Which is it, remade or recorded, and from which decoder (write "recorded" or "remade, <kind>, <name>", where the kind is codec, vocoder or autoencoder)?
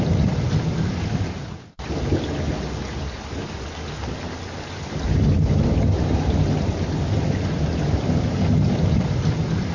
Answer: recorded